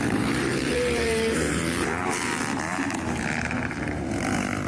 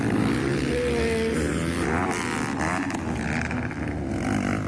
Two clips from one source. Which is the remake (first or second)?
first